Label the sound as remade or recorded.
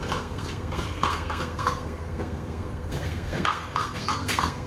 remade